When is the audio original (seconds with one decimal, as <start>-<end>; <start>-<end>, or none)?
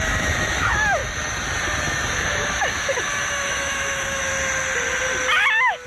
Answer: 1.0-1.8; 4.3-5.9